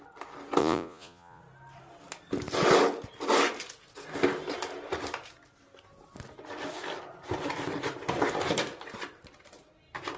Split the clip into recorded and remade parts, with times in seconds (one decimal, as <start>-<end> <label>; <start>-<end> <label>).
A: 0.0-0.6 recorded; 0.6-1.4 remade; 1.4-10.2 recorded